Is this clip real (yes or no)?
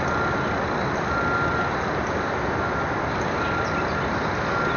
yes